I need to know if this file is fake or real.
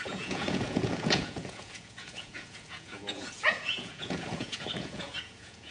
fake